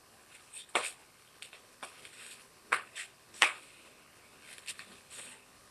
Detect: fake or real fake